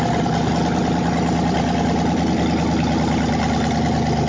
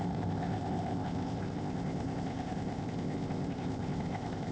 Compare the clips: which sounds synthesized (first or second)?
second